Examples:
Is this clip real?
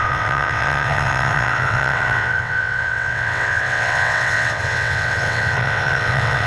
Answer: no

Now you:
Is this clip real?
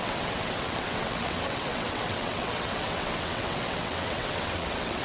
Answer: no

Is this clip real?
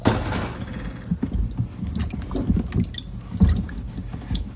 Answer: yes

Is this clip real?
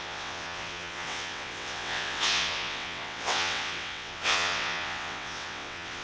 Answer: no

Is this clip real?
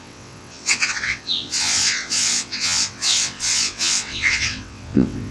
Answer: no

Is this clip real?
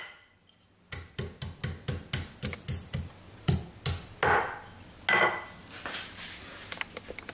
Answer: yes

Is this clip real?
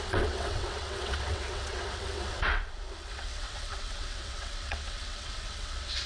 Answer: no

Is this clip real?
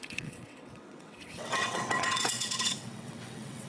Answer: no